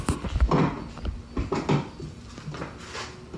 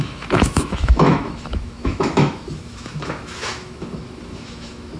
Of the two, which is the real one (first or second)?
first